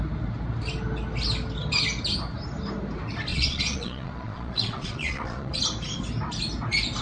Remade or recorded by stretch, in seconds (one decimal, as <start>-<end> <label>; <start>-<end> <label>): 0.0-3.3 recorded; 3.3-5.5 remade; 5.5-7.0 recorded